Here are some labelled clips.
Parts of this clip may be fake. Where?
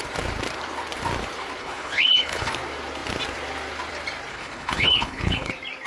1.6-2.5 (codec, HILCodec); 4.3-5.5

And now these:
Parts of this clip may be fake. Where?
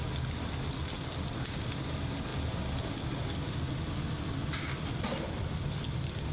none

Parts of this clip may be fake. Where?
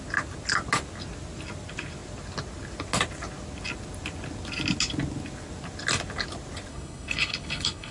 6.7-7.9 (codec, HILCodec)